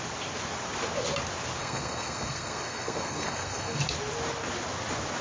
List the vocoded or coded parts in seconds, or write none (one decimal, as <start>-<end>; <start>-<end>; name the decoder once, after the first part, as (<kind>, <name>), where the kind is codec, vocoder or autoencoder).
1.6-3.8 (codec, SNAC)